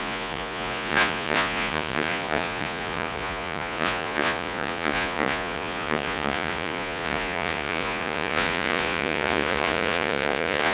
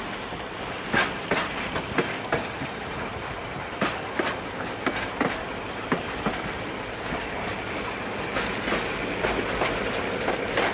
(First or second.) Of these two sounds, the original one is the second